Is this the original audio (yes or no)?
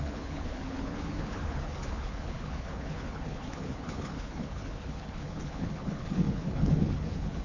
no